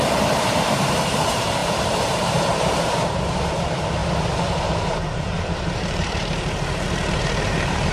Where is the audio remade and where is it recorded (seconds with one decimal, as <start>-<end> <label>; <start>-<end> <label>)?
0.0-4.0 remade; 4.0-4.6 recorded; 4.6-7.9 remade